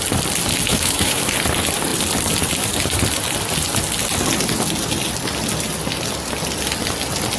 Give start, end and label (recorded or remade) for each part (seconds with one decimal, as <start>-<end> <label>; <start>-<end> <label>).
0.0-0.7 recorded; 0.7-1.3 remade; 1.3-7.4 recorded